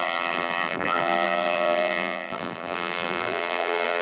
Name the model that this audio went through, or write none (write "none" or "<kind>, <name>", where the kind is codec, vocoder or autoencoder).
vocoder, BigVGAN v2